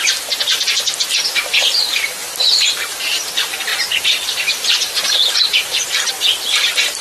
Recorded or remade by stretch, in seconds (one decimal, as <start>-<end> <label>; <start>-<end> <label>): 0.0-7.0 remade